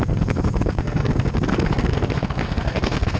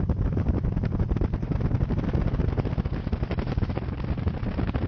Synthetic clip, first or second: first